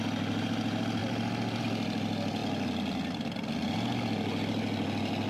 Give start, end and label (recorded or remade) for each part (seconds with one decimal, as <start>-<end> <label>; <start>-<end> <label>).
0.0-2.4 remade; 2.4-5.3 recorded